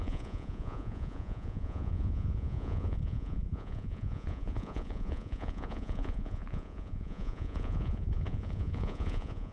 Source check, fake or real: fake